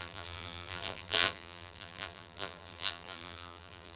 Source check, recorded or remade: remade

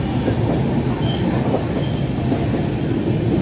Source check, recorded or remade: recorded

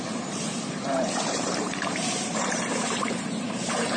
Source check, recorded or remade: remade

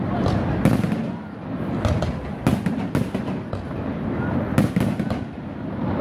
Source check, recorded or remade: recorded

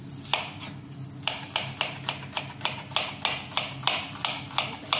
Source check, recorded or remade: recorded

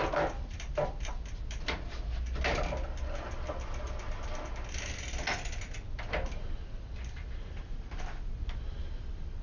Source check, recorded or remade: recorded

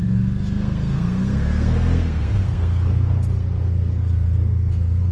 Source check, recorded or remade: remade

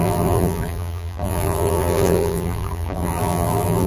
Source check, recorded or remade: remade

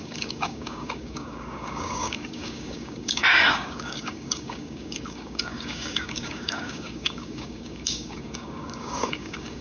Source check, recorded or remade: remade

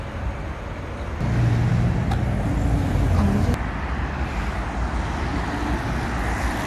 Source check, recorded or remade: recorded